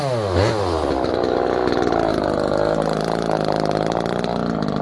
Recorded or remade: recorded